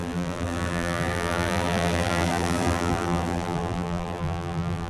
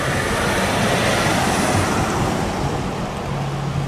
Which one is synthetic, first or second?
first